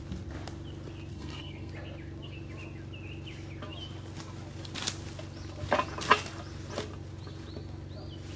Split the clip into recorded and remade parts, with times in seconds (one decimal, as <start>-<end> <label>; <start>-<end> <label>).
0.0-1.1 recorded; 1.1-1.7 remade; 1.7-8.4 recorded